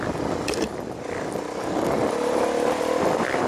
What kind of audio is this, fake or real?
fake